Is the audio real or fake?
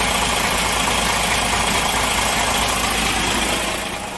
real